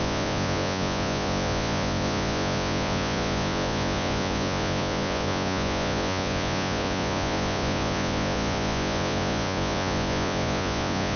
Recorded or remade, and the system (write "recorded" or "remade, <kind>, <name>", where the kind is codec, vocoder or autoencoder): remade, vocoder, Vocos